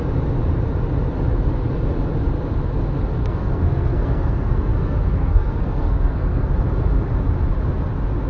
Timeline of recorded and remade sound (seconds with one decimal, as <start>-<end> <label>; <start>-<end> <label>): 0.0-3.2 recorded; 3.2-6.5 remade; 6.5-8.3 recorded